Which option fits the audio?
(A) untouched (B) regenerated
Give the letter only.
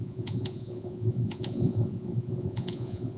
B